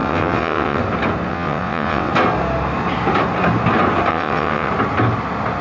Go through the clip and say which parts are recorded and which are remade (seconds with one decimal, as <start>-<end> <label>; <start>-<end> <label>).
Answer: 0.0-0.8 remade; 0.8-1.3 recorded; 1.3-2.1 remade; 2.1-4.1 recorded; 4.1-4.7 remade; 4.7-5.6 recorded